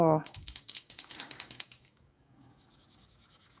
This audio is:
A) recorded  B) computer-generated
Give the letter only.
B